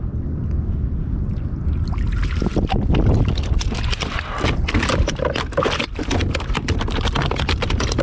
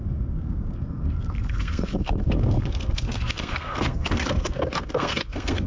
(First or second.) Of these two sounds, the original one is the first